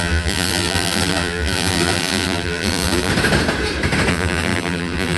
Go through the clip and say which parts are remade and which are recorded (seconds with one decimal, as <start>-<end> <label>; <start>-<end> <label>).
0.0-3.1 remade; 3.1-4.1 recorded; 4.1-5.2 remade

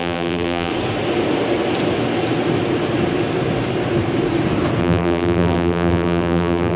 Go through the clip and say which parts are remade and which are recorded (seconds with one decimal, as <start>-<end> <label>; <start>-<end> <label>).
0.0-0.7 remade; 0.7-4.8 recorded; 4.8-6.8 remade